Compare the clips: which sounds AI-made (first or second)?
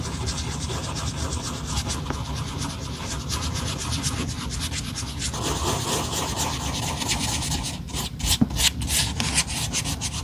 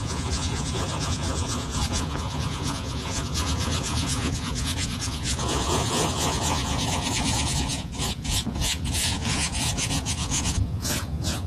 second